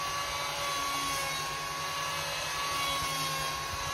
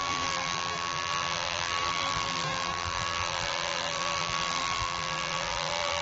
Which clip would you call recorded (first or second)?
first